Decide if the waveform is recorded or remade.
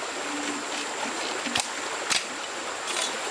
recorded